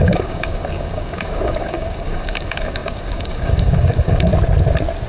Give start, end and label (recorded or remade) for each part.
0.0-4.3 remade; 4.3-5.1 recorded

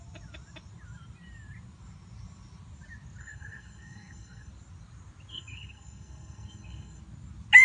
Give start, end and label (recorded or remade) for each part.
0.0-3.2 recorded; 3.2-4.5 remade; 4.5-5.3 recorded; 5.3-7.0 remade; 7.0-7.6 recorded

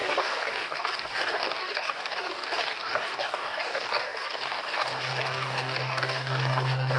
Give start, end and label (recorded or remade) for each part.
0.0-7.0 remade

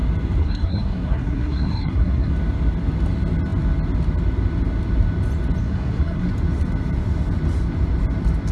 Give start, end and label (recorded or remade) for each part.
0.0-0.4 recorded; 0.4-2.3 remade; 2.3-5.6 recorded; 5.6-6.3 remade; 6.3-8.5 recorded